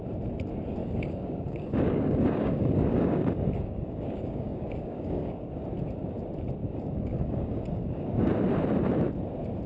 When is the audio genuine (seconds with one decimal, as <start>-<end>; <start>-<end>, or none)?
0.0-0.8; 5.5-6.6; 8.3-9.7